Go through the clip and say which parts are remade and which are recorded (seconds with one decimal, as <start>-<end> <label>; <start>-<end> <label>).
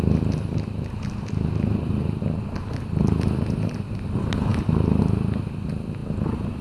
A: 0.0-4.5 recorded; 4.5-5.0 remade; 5.0-6.6 recorded